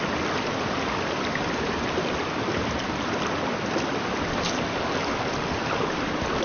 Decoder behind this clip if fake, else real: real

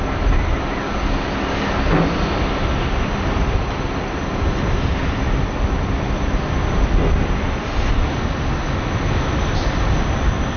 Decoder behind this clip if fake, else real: real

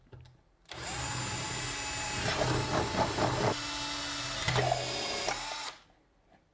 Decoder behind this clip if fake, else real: real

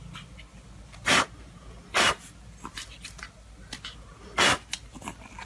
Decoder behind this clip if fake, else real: real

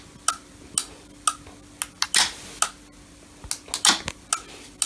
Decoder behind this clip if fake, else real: real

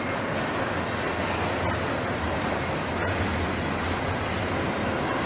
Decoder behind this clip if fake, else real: real